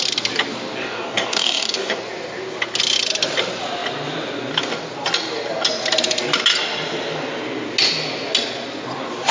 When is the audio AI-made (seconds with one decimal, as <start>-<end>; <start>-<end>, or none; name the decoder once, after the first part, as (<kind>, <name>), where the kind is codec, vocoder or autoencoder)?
0.8-2.0 (codec, DAC)